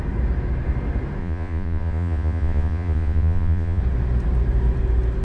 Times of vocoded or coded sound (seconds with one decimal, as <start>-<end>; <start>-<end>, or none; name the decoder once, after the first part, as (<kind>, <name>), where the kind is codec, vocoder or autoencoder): 1.2-3.8 (vocoder, Vocos)